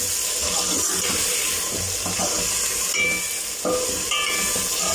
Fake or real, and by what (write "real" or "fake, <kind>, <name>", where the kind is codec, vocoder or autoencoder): real